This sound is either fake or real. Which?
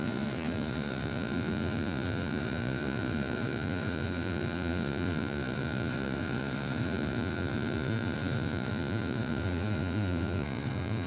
fake